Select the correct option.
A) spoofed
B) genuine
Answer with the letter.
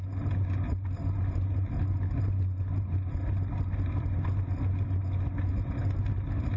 B